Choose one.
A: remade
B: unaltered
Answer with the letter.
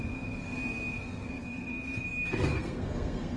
A